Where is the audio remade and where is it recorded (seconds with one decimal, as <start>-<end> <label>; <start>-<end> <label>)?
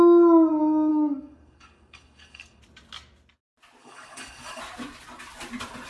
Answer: 0.0-0.9 recorded; 0.9-2.6 remade; 2.6-3.8 recorded; 3.8-4.6 remade; 4.6-5.9 recorded